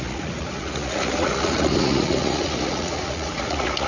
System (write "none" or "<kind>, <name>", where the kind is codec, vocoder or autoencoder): vocoder, Vocos